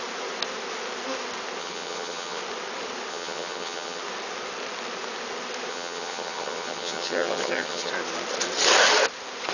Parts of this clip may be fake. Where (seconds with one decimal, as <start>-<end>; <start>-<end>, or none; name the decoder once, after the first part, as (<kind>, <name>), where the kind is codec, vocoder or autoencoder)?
1.6-2.4 (vocoder, HiFi-GAN); 3.1-4.0; 5.7-7.9